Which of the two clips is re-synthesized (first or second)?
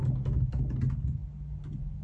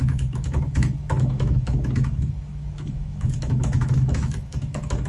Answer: second